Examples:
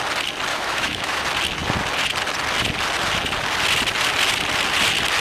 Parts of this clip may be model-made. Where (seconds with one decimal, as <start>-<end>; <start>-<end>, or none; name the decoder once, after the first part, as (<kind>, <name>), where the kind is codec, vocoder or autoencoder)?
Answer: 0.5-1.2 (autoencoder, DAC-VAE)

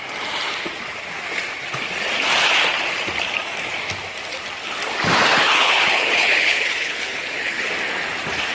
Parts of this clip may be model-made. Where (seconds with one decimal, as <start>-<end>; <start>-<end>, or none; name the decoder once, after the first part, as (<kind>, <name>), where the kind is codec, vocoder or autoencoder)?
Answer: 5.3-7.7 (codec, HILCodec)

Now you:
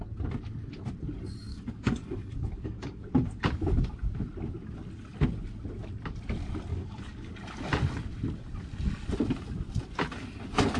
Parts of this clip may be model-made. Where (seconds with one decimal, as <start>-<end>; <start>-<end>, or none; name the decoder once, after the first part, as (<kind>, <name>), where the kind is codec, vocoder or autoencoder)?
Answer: 1.5-3.0 (codec, DAC); 6.7-7.3

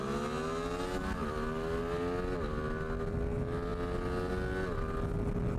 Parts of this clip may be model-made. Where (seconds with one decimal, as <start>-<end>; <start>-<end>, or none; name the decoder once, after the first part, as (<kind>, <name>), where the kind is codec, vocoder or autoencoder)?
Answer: none

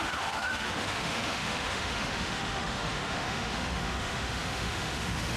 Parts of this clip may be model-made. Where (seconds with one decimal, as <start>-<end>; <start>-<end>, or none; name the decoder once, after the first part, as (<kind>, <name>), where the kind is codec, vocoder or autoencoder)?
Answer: 0.0-5.4 (autoencoder, DAC-VAE)

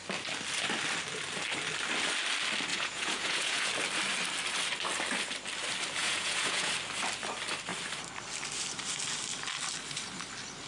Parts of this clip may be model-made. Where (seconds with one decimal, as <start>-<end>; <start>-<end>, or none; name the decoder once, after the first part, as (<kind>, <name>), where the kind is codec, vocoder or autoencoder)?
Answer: 2.7-3.7 (vocoder, Vocos); 6.0-6.7

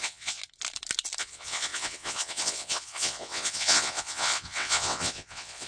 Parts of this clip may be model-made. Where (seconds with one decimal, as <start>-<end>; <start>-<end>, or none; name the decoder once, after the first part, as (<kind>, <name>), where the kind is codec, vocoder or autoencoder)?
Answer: 0.0-0.4 (vocoder, WaveNeXt); 1.2-5.7

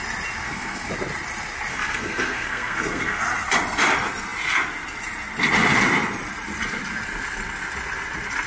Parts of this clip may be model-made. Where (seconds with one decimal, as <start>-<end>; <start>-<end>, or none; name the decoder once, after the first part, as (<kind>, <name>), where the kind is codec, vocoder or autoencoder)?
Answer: 0.4-0.9 (codec, SNAC); 1.7-3.2